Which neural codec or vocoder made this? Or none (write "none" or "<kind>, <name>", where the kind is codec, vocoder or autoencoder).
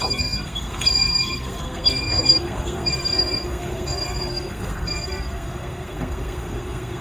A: codec, SNAC